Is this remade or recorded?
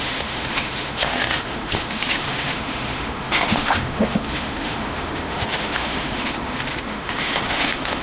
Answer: remade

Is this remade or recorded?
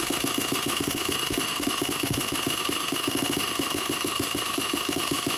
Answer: remade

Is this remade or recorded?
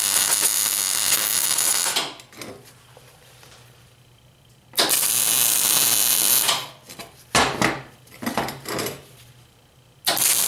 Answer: recorded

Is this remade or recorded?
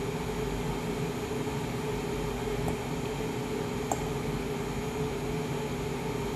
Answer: recorded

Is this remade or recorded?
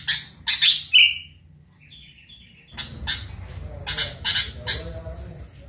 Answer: recorded